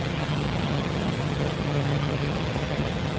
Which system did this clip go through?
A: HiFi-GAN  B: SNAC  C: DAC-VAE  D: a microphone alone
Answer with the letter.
A